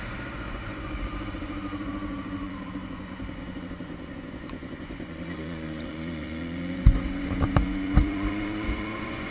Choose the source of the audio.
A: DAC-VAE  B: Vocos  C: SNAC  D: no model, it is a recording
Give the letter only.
B